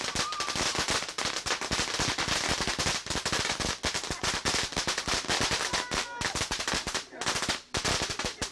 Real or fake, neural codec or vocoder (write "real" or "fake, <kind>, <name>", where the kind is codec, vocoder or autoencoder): real